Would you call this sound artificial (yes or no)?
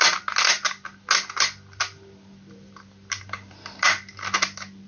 no